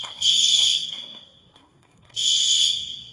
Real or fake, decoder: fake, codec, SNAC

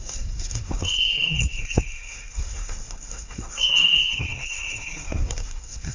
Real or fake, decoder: fake, codec, SNAC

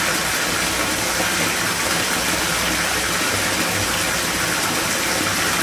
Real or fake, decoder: real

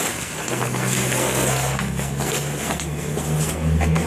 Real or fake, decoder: fake, codec, SNAC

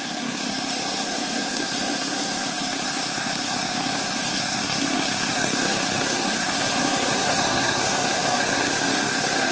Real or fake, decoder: fake, codec, SNAC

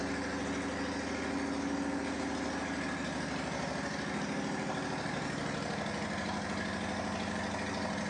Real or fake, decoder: real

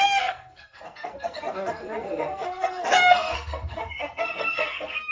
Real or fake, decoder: fake, codec, SNAC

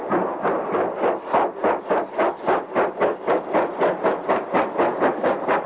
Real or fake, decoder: real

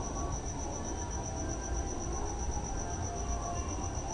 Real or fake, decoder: real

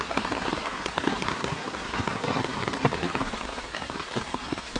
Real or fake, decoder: fake, codec, SNAC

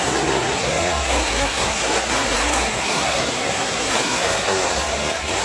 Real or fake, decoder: fake, codec, SNAC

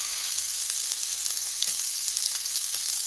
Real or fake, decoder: fake, codec, SNAC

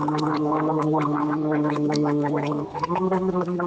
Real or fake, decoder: fake, codec, SNAC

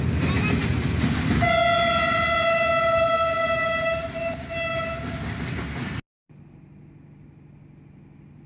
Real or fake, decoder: real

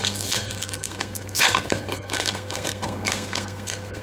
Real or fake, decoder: fake, codec, SNAC